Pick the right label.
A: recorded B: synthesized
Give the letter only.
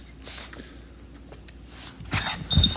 A